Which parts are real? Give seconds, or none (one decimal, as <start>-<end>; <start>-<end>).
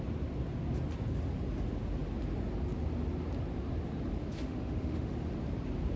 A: 0.0-4.3; 5.1-6.0